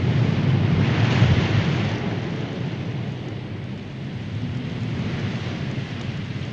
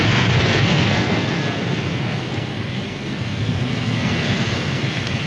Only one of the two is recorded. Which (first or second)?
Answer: first